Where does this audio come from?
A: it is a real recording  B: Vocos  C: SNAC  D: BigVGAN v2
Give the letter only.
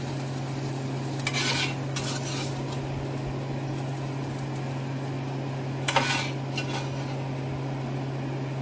A